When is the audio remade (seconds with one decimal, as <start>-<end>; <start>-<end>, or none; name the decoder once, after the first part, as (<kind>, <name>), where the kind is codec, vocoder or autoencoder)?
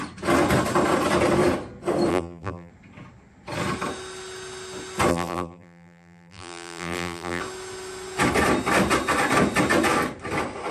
2.1-2.7 (vocoder, BigVGAN v2); 5.1-7.4